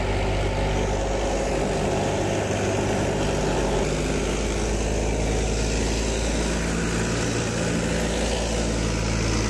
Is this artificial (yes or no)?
no